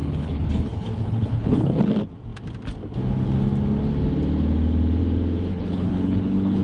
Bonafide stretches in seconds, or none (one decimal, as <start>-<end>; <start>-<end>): 1.8-5.5